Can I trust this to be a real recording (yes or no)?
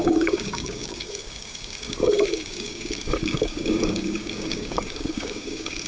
no